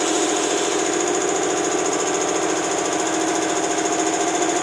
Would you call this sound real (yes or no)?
yes